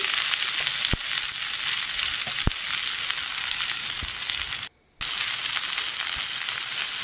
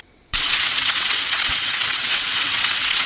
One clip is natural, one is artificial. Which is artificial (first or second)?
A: second